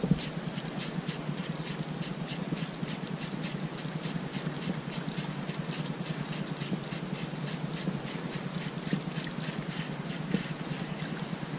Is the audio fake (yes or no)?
no